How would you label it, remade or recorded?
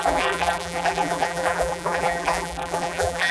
remade